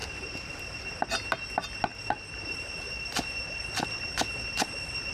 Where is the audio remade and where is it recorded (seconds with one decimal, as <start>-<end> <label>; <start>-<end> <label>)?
0.0-0.8 remade; 0.8-1.9 recorded; 1.9-5.1 remade